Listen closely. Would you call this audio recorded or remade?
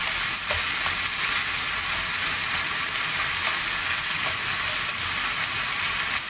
recorded